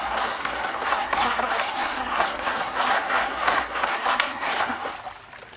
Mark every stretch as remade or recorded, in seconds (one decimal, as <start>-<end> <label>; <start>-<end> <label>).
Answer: 0.0-4.9 remade; 4.9-5.6 recorded

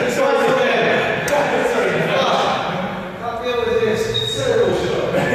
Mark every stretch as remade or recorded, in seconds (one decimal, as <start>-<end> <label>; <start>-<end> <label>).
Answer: 0.0-1.6 recorded; 1.6-2.7 remade; 2.7-5.3 recorded

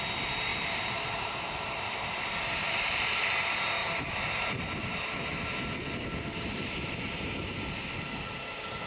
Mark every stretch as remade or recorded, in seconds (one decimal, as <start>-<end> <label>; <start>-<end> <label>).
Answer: 0.0-0.5 recorded; 0.5-3.3 remade; 3.3-3.8 recorded; 3.8-4.6 remade; 4.6-8.9 recorded

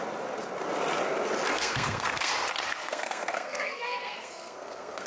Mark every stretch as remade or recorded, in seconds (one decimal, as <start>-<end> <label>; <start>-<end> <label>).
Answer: 0.0-1.5 recorded; 1.5-2.3 remade; 2.3-2.8 recorded; 2.8-5.1 remade